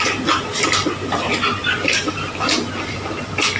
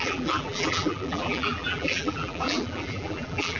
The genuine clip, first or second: first